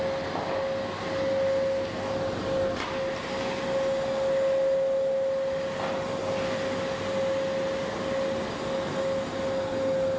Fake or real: real